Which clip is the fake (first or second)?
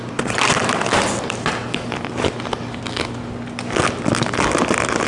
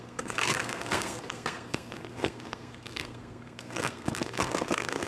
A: second